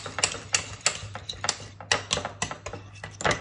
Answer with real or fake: real